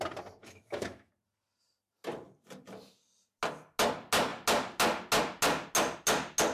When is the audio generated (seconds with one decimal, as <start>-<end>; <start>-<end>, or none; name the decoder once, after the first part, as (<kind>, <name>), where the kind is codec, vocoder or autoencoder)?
0.4-1.1 (autoencoder, DAC-VAE)